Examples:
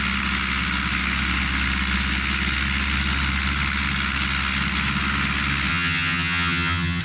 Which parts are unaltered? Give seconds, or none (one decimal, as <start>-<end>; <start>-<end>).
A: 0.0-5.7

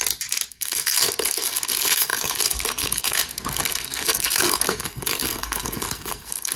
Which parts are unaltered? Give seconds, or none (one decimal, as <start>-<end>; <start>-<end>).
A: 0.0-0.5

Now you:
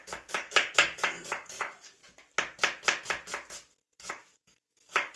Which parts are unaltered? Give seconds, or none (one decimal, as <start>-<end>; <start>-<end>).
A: 2.0-4.1

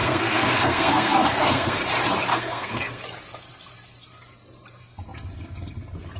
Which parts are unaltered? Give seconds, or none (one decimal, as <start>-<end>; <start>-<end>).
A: 1.8-2.3; 3.0-6.2

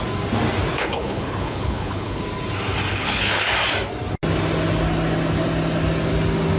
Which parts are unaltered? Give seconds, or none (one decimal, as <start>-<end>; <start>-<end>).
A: 0.0-0.7; 2.2-2.9; 3.5-6.6